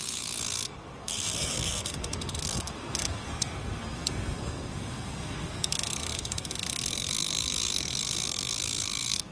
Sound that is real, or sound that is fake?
fake